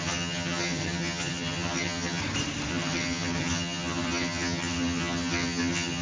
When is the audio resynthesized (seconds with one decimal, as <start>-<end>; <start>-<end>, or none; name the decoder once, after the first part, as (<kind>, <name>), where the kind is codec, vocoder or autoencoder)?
0.0-2.2 (vocoder, HiFi-GAN); 2.7-6.0